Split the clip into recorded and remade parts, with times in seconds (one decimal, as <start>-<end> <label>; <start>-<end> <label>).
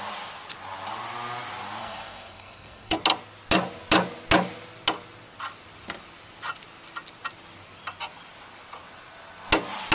0.0-1.8 recorded; 1.8-3.0 remade; 3.0-9.9 recorded